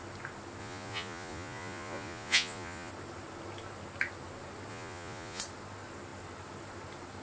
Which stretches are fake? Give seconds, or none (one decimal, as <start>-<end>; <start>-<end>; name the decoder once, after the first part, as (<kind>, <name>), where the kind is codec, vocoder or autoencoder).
0.6-2.9 (vocoder, Vocos); 4.7-5.4